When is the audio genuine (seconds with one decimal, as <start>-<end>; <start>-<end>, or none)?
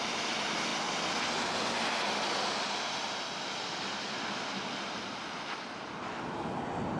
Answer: 0.0-7.0